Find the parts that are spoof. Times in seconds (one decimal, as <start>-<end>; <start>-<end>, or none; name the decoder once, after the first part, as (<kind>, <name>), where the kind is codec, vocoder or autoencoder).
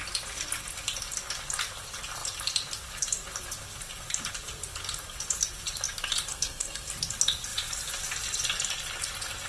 6.3-6.9 (codec, SNAC)